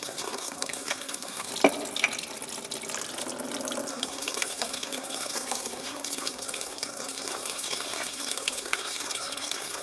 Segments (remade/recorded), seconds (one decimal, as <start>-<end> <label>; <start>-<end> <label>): 0.0-1.5 remade; 1.5-3.9 recorded; 3.9-9.8 remade